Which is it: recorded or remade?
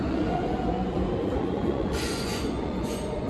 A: remade